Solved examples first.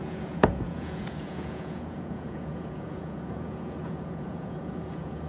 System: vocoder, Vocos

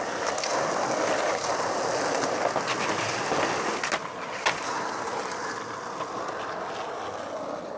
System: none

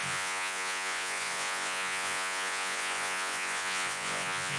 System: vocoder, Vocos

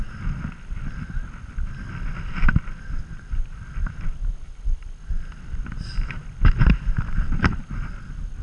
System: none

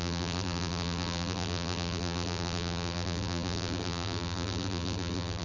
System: vocoder, BigVGAN v2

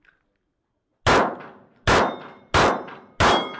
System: none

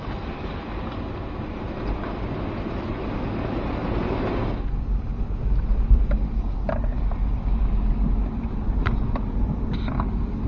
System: none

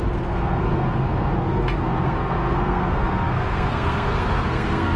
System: codec, SNAC